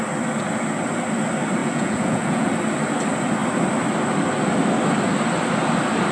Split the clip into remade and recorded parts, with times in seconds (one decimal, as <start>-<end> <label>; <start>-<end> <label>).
0.0-1.6 recorded; 1.6-2.5 remade; 2.5-6.1 recorded